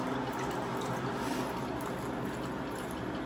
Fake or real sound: real